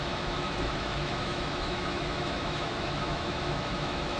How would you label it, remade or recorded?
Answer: remade